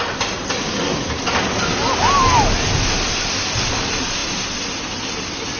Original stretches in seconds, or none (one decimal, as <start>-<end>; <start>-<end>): 1.7-3.7